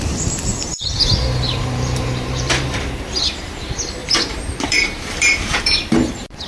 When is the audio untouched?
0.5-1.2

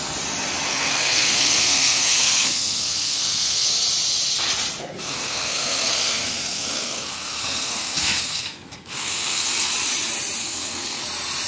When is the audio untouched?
0.0-0.7; 3.7-4.8; 9.7-10.4; 11.0-11.5

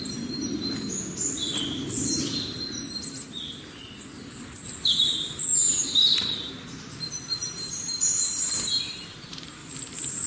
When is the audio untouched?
0.0-5.4; 6.9-7.4; 8.5-9.6

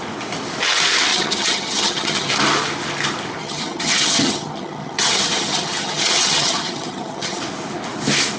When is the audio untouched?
0.0-1.1; 2.3-3.4; 7.4-8.4

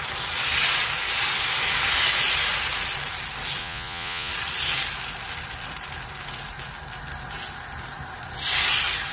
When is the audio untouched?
0.0-3.6; 4.3-9.1

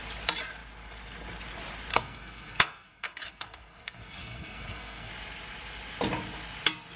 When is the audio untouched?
0.0-1.9; 5.1-7.0

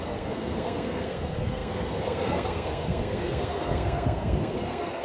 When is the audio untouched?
none

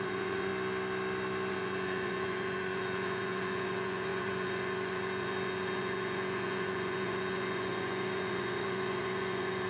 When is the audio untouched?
0.5-1.5